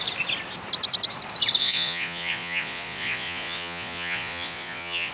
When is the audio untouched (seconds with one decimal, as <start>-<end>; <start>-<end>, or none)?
0.0-1.6